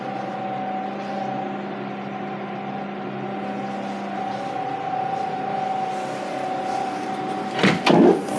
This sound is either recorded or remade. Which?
recorded